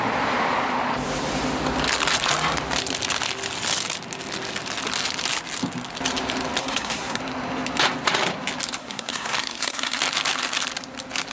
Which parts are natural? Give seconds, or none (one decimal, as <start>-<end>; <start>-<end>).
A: 0.0-6.6; 7.2-8.8; 10.0-11.3